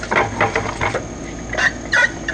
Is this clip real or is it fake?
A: real